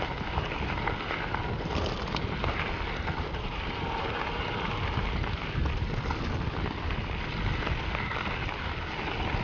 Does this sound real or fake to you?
real